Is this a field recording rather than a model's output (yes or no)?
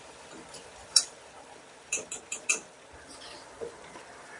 no